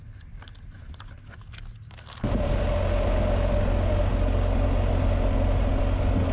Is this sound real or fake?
real